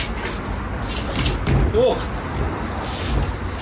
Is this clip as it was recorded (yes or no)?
yes